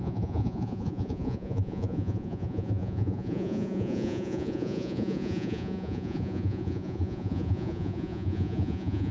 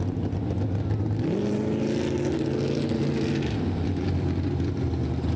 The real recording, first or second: second